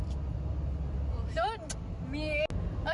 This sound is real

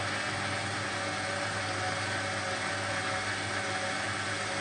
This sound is real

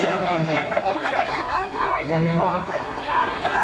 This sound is fake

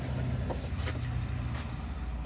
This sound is real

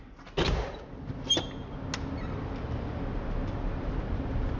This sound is real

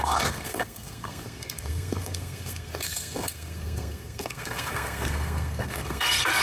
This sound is fake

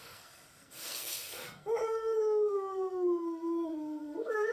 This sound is fake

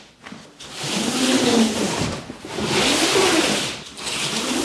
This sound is real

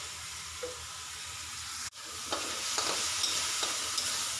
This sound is real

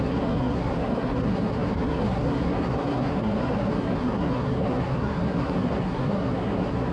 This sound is fake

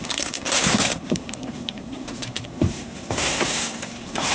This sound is fake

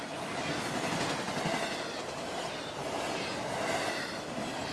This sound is real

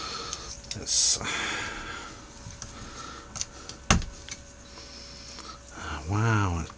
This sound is real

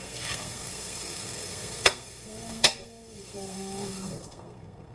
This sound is fake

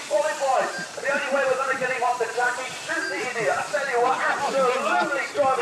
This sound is real